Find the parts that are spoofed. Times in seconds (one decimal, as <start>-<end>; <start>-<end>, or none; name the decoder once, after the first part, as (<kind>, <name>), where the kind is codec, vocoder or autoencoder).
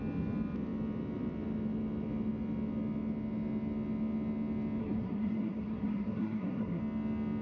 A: 4.8-6.8 (codec, SNAC)